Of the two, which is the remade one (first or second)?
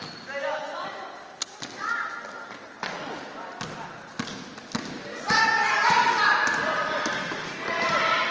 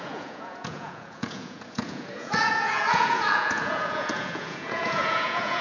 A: second